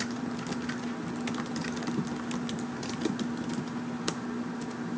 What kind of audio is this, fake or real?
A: real